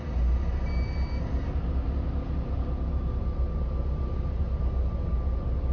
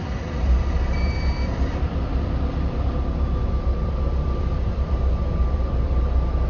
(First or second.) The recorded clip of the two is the first